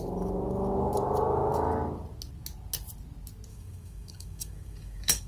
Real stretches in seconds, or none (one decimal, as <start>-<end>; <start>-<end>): 0.0-3.5